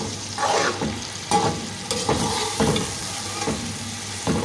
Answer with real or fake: real